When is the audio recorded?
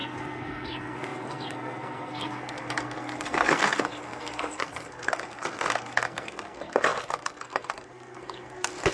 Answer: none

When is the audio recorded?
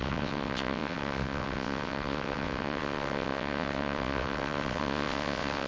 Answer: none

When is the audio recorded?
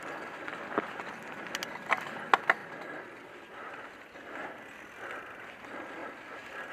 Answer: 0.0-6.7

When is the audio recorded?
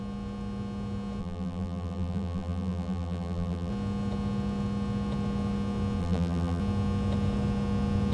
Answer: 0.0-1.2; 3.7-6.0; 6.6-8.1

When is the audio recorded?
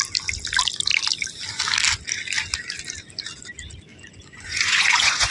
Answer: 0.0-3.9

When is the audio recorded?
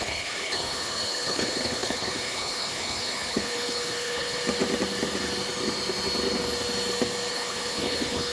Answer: 4.4-7.3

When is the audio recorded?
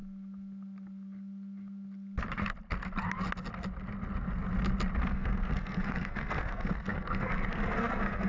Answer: 0.0-5.0